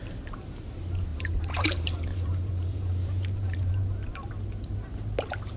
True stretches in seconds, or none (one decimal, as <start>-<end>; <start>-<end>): 0.0-1.1; 3.7-5.6